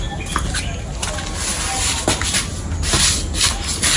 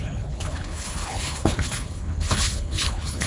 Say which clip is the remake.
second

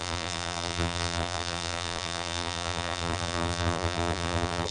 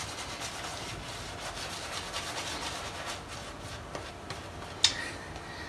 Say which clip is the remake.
first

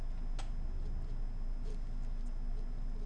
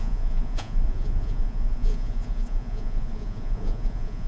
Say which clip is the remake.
second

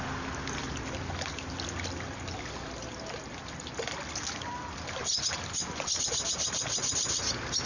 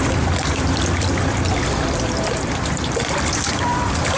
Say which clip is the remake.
second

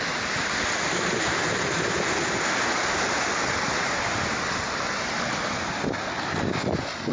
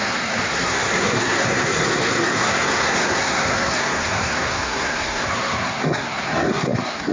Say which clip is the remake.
second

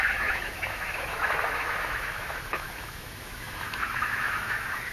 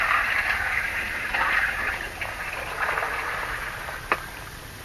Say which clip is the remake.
first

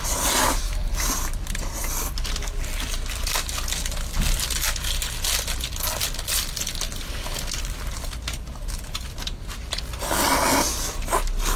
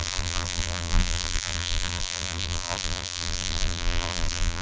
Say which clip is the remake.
second